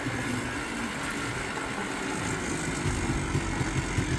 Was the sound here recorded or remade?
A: recorded